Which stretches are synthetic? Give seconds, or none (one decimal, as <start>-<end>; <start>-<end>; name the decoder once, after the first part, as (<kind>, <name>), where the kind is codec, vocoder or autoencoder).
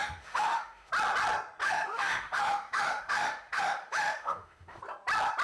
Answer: 0.0-0.9 (autoencoder, DAC-VAE); 1.6-4.8